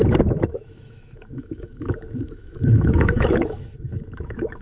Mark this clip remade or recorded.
remade